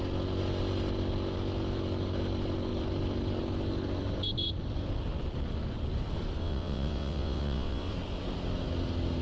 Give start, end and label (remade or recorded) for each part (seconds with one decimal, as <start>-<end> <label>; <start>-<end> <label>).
0.0-6.4 recorded; 6.4-7.9 remade; 7.9-9.2 recorded